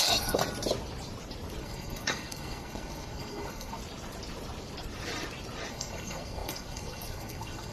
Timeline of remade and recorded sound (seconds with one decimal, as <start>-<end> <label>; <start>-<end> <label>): 0.0-0.4 remade; 0.4-1.6 recorded; 1.6-3.8 remade; 3.8-5.7 recorded; 5.7-7.7 remade